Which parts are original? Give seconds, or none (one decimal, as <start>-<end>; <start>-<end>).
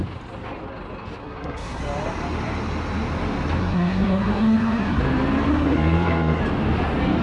0.0-1.2; 1.8-3.6; 5.0-5.5; 6.4-7.2